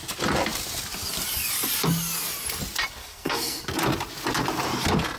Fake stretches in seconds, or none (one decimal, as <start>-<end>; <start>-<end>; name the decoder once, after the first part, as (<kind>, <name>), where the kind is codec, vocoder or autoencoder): 3.0-3.6 (codec, SNAC)